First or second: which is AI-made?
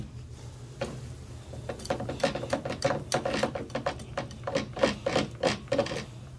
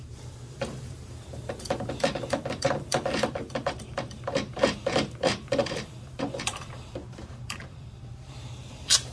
second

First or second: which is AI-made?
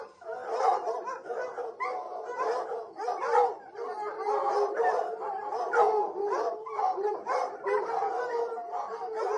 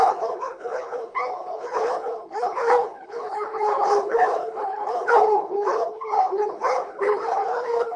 second